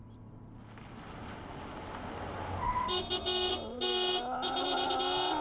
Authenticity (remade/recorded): recorded